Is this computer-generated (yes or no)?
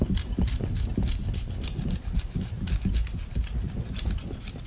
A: no